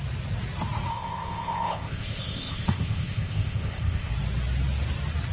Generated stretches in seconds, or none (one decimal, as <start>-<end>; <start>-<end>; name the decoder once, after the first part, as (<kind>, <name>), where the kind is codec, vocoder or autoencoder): 0.9-4.1 (codec, ZipCodec)